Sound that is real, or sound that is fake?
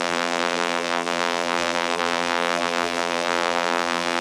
fake